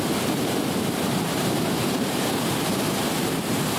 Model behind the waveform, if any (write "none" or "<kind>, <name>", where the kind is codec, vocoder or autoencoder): vocoder, BigVGAN v2